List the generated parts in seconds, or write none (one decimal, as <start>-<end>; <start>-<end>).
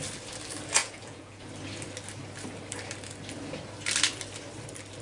0.8-1.4